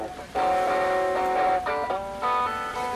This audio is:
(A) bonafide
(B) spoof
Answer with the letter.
A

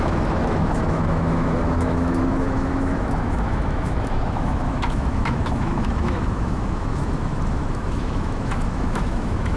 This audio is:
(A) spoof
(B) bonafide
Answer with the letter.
A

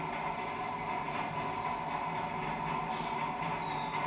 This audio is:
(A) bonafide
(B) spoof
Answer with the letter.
A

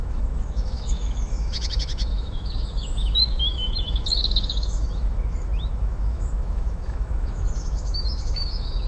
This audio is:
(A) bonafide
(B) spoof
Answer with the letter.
B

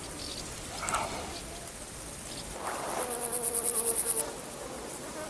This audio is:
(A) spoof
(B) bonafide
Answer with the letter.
B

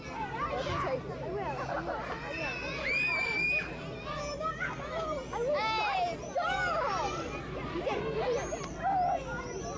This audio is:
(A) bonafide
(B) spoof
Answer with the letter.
A